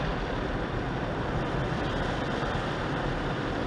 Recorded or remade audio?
remade